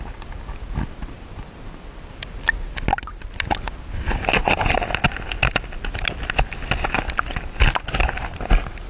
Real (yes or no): yes